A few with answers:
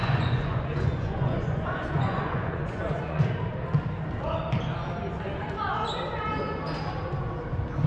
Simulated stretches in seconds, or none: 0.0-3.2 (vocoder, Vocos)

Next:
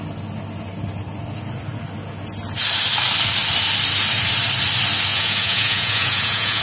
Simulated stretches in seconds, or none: 5.1-6.6 (vocoder, Vocos)

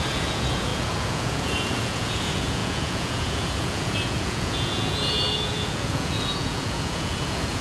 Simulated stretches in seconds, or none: 0.0-7.6 (vocoder, Vocos)